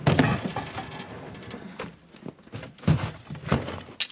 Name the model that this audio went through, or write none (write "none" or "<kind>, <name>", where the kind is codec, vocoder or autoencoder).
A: none